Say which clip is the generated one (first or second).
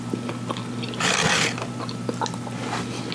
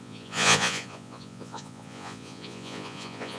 second